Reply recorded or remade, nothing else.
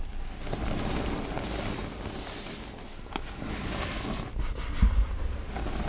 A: recorded